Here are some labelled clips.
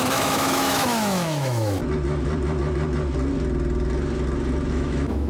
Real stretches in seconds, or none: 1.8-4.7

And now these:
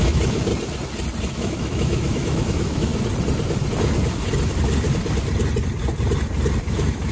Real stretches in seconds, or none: 0.5-1.3; 2.9-6.6

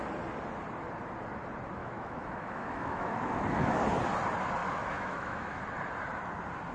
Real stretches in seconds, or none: 0.0-1.8; 3.8-4.6; 5.6-6.7

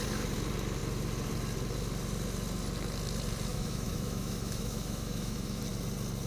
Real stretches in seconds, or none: 0.0-3.5; 5.6-6.3

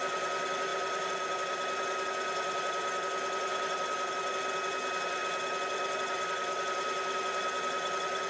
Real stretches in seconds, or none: 0.0-8.3

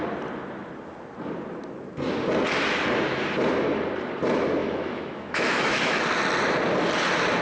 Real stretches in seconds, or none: 0.0-4.6; 6.0-7.4

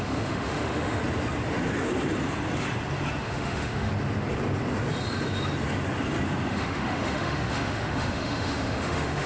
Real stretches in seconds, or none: 1.0-3.2; 3.9-6.5

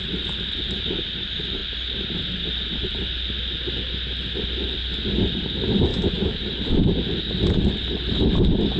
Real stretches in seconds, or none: 0.0-5.9; 6.5-8.8